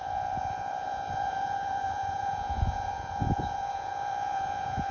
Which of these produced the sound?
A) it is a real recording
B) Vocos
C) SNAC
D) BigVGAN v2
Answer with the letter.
B